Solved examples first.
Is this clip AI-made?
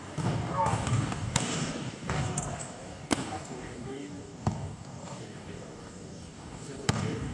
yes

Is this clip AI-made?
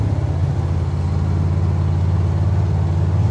no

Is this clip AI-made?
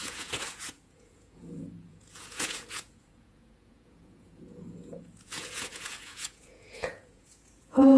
yes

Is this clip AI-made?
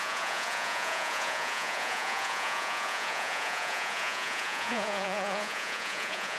yes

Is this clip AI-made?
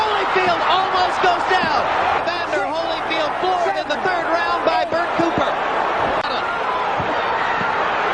no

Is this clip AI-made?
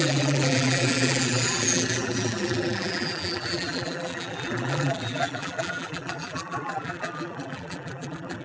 yes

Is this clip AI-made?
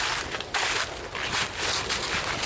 no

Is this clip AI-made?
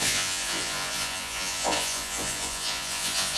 yes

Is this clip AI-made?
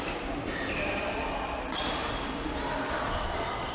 no